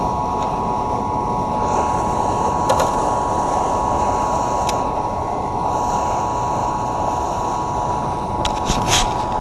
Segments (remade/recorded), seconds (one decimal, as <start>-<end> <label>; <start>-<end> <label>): 0.0-9.4 recorded